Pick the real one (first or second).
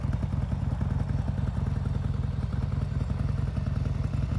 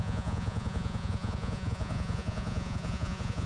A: first